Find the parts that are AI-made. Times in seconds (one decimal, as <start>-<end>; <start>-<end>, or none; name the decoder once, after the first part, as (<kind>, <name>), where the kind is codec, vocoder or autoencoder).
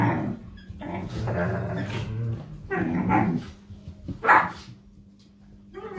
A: 0.4-1.2 (vocoder, Vocos)